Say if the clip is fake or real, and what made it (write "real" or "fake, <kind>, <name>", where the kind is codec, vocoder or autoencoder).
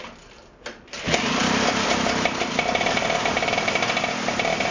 fake, vocoder, BigVGAN v2